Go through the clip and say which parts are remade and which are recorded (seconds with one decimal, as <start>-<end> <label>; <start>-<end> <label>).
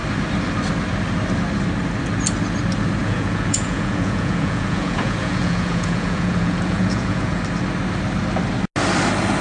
0.0-3.0 recorded; 3.0-7.4 remade; 7.4-9.4 recorded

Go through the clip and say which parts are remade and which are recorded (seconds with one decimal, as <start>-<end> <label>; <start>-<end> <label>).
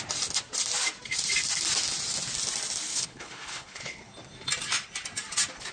0.0-2.9 recorded; 2.9-4.1 remade; 4.1-5.7 recorded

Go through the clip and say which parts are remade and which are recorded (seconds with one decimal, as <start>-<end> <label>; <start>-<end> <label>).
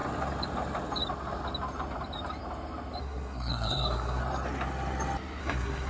0.0-3.0 recorded; 3.0-4.2 remade; 4.2-5.4 recorded; 5.4-5.9 remade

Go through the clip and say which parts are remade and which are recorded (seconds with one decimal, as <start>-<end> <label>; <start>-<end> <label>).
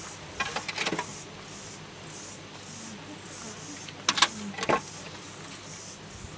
0.0-6.4 recorded